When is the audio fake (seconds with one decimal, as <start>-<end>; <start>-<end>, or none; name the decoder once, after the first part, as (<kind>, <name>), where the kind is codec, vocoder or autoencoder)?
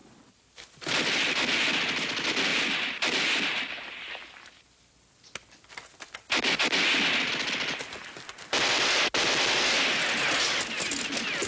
0.0-1.5 (vocoder, BigVGAN v2); 2.5-5.0